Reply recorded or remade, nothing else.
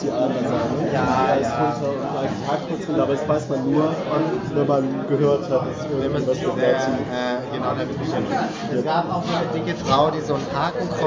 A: recorded